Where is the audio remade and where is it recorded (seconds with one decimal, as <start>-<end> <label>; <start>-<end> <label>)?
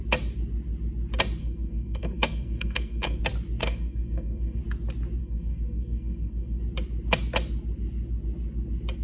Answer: 0.0-1.4 recorded; 1.4-3.2 remade; 3.2-3.6 recorded; 3.6-4.6 remade; 4.6-5.2 recorded; 5.2-6.6 remade; 6.6-9.0 recorded